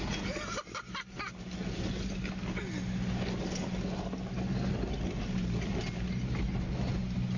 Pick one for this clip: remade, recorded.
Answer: recorded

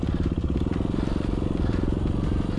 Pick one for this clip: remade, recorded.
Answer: recorded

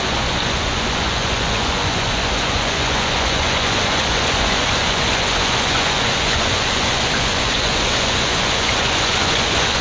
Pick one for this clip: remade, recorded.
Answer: remade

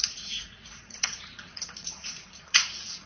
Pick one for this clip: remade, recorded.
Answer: remade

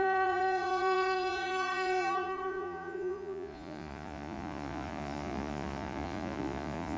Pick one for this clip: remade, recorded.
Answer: remade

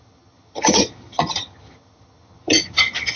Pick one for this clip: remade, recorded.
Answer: remade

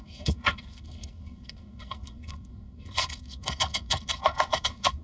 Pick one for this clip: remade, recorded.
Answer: remade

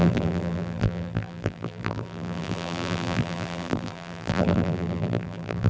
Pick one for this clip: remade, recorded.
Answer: remade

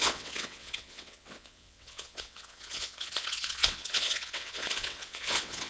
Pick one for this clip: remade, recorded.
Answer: remade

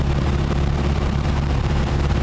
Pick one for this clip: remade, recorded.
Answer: remade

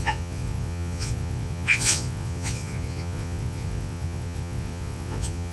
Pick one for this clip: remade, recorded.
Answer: remade